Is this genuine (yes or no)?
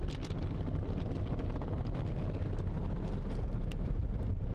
yes